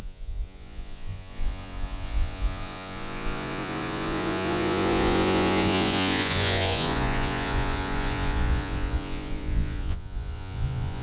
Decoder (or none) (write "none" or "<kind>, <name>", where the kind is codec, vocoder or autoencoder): vocoder, Vocos